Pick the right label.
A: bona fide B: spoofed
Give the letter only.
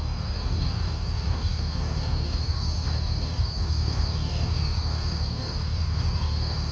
B